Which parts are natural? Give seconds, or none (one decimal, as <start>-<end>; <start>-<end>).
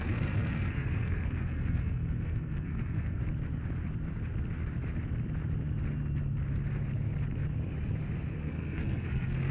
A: 3.2-8.3